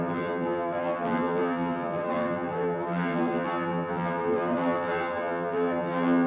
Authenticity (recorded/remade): remade